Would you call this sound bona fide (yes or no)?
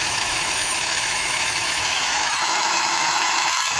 no